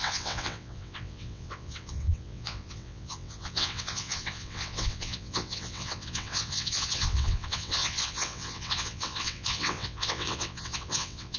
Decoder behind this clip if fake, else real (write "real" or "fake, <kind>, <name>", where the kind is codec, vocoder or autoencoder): fake, vocoder, WaveNeXt